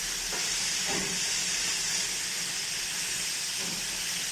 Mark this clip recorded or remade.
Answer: recorded